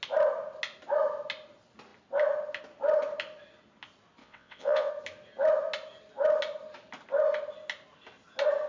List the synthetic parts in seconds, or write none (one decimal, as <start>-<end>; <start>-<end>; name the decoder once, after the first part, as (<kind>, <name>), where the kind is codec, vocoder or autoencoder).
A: 4.2-4.9 (vocoder, WaveNeXt)